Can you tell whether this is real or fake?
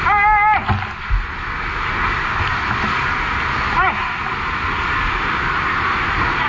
real